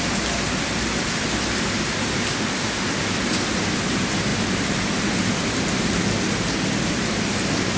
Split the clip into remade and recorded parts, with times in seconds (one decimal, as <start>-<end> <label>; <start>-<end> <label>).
0.0-7.8 recorded